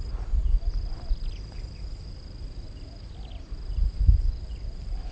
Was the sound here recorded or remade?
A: remade